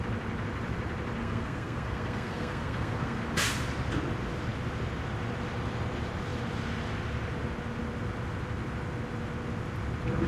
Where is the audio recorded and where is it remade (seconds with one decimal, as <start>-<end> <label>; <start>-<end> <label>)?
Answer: 0.0-1.2 recorded; 1.2-3.2 remade; 3.2-10.3 recorded